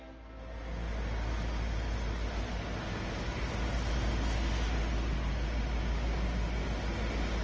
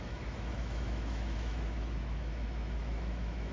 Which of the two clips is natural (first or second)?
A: first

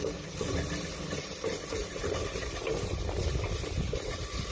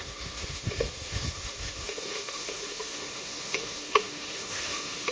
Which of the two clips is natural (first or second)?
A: first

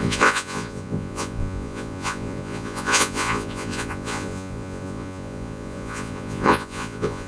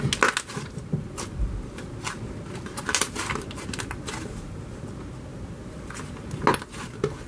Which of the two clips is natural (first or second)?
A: second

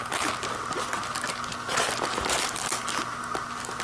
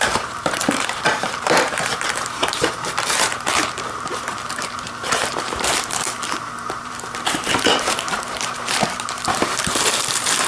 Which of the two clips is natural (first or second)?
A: first